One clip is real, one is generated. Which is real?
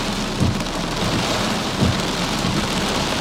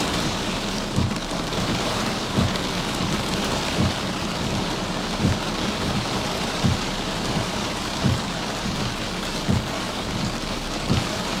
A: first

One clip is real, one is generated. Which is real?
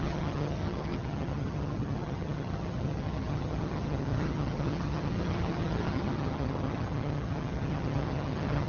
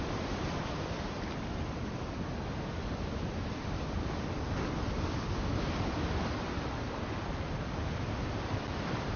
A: second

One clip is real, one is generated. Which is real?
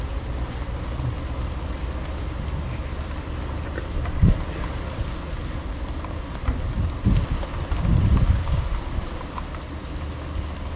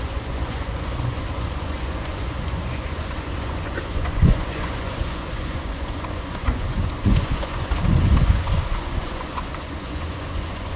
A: first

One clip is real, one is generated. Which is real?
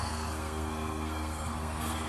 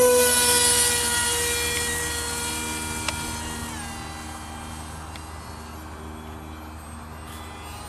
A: second